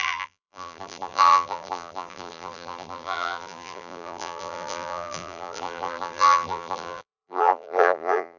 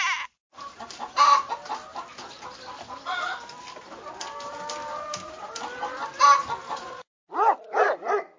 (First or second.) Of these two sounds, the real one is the second